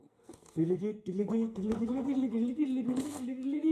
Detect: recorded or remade remade